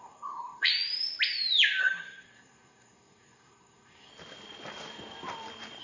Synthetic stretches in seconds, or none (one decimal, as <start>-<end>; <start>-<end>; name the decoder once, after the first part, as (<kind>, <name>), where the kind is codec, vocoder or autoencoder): 0.0-0.7 (codec, SNAC); 1.8-4.1